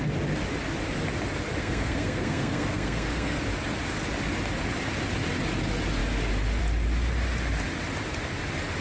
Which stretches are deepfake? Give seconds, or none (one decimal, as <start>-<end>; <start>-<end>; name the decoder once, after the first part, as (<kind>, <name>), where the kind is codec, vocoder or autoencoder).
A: 1.6-3.4 (codec, SNAC)